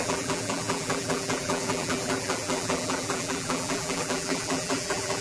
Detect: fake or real fake